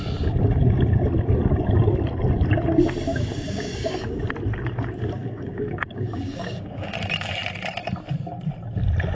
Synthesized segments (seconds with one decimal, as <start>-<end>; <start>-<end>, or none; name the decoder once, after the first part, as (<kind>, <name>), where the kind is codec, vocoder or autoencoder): 3.1-4.2 (codec, DAC); 5.2-6.9